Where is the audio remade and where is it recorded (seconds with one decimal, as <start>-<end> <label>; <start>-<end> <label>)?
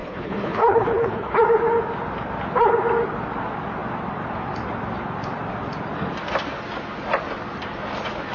0.0-1.4 remade; 1.4-8.3 recorded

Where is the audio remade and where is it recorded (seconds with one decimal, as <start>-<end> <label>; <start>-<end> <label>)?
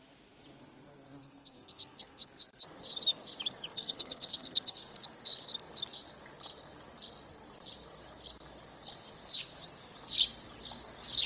0.0-1.2 recorded; 1.2-2.3 remade; 2.3-3.7 recorded; 3.7-4.9 remade; 4.9-11.3 recorded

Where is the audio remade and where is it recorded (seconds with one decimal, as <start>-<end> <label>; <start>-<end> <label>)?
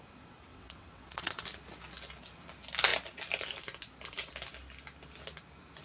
0.0-0.5 recorded; 0.5-1.4 remade; 1.4-5.8 recorded